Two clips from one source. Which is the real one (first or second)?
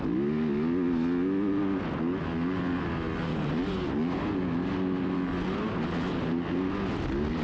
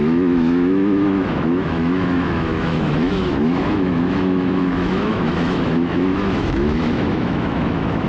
first